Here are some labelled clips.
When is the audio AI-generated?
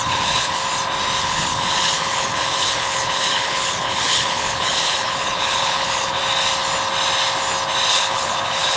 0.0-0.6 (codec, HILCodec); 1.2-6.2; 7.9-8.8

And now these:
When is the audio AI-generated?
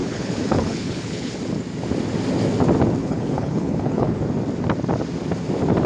0.0-1.3 (codec, HILCodec); 3.0-4.2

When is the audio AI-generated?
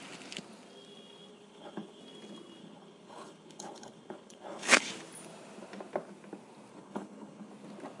1.3-2.0 (codec, HILCodec); 2.6-4.9; 6.7-7.5